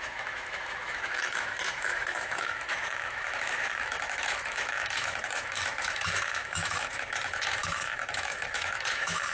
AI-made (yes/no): yes